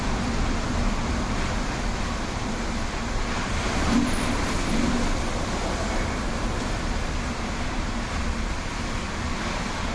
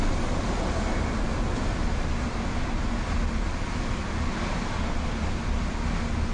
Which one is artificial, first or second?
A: first